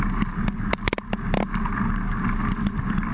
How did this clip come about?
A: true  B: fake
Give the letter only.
A